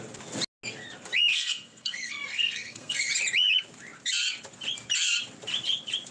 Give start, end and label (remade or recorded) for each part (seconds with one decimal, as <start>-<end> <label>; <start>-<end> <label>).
0.0-1.3 recorded; 1.3-3.1 remade; 3.1-6.1 recorded